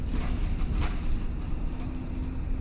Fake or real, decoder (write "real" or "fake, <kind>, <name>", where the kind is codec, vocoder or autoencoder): real